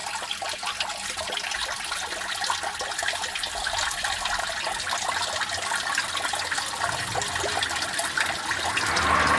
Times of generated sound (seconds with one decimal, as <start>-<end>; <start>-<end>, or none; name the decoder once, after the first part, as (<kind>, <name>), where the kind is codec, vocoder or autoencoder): none